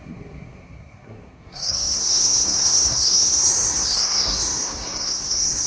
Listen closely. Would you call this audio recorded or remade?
remade